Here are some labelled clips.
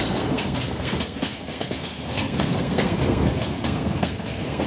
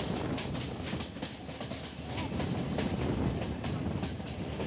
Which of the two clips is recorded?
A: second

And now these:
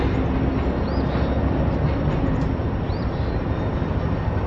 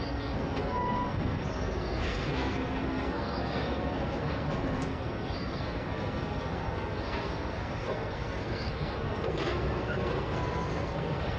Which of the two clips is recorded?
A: first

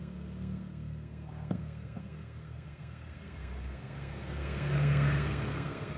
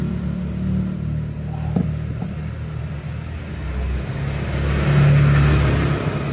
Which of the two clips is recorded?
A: second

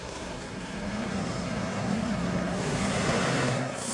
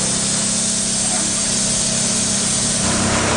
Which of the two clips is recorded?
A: second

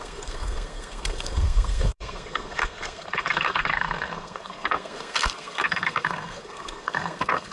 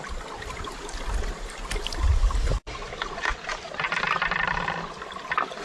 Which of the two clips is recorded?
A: second